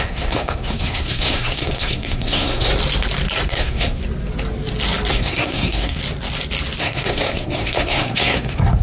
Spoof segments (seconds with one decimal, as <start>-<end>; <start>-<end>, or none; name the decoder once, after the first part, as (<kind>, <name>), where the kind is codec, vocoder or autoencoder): 0.0-2.7 (codec, SNAC); 3.5-4.0; 5.1-6.0; 6.8-8.8